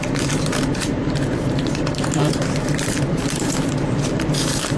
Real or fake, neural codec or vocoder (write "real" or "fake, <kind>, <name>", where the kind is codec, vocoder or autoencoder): fake, vocoder, BigVGAN v2